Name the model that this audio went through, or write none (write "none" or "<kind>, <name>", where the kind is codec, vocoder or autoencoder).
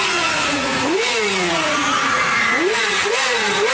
vocoder, Vocos